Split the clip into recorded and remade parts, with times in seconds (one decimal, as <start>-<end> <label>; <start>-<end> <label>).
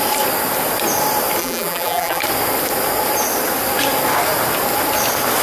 0.0-1.4 recorded; 1.4-2.2 remade; 2.2-5.4 recorded